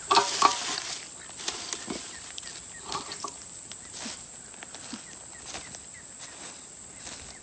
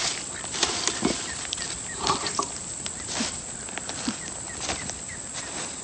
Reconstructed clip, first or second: second